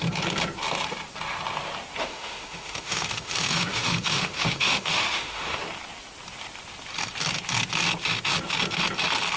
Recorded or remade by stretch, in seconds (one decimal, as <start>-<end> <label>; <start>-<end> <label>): 0.0-2.0 recorded; 2.0-5.6 remade; 5.6-9.4 recorded